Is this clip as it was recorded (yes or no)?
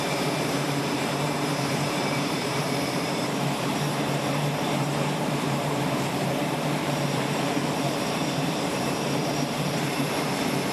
no